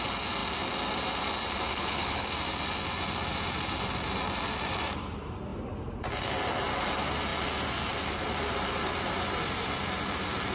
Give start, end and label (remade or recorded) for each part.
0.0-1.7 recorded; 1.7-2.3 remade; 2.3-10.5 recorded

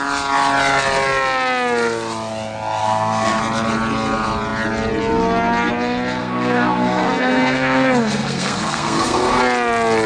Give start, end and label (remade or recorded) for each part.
0.0-2.8 recorded; 2.8-3.4 remade; 3.4-6.2 recorded; 6.2-9.4 remade; 9.4-10.1 recorded

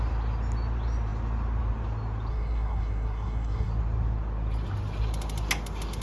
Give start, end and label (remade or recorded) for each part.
0.0-2.3 recorded; 2.3-3.7 remade; 3.7-6.0 recorded

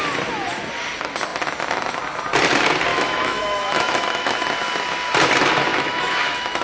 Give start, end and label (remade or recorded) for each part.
0.0-2.9 recorded; 2.9-4.3 remade; 4.3-5.7 recorded; 5.7-6.6 remade

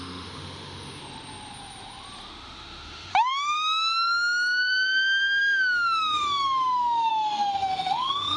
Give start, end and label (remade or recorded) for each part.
0.0-1.0 remade; 1.0-2.3 recorded; 2.3-8.4 remade

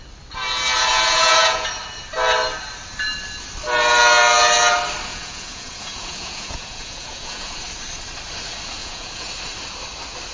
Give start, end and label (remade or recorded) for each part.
0.0-0.9 recorded; 0.9-1.7 remade; 1.7-5.1 recorded; 5.1-7.5 remade; 7.5-8.8 recorded; 8.8-9.3 remade; 9.3-10.3 recorded